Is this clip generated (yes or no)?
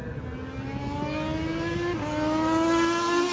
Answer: no